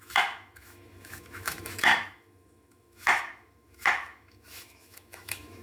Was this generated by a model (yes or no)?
yes